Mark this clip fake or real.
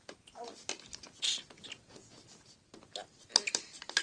real